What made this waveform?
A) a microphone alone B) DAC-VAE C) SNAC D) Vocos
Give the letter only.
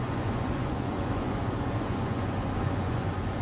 D